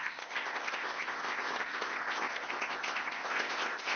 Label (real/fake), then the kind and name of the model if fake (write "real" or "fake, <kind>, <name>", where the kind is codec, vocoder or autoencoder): fake, codec, ZipCodec